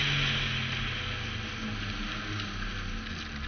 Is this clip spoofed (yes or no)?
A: no